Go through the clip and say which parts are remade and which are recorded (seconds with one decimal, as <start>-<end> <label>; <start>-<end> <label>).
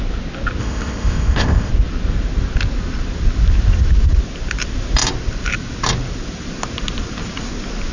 0.0-0.6 recorded; 0.6-1.7 remade; 1.7-7.9 recorded